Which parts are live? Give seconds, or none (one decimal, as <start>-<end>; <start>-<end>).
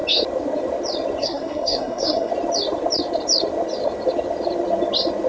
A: 0.0-1.2; 2.3-5.3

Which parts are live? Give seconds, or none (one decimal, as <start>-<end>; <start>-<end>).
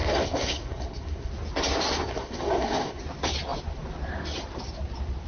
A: 1.3-2.1; 3.0-5.3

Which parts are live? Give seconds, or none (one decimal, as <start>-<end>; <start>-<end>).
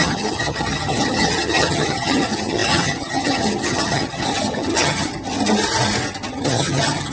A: 5.1-6.3